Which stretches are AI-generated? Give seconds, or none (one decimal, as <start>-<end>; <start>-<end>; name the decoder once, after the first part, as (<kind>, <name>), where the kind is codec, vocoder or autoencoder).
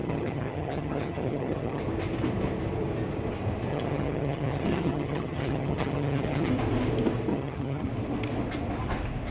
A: 0.0-1.8 (vocoder, HiFi-GAN); 3.7-6.5; 7.3-7.9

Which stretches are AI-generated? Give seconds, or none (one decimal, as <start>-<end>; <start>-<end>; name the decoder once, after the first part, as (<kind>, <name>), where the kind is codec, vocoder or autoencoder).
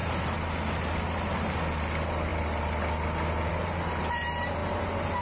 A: none